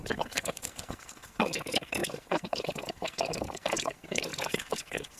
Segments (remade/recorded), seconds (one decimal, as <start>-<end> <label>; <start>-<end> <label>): 0.0-5.2 remade